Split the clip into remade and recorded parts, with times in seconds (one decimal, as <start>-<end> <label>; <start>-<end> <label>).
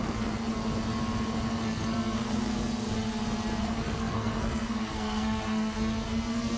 0.0-0.5 remade; 0.5-1.5 recorded; 1.5-2.5 remade; 2.5-3.6 recorded; 3.6-6.6 remade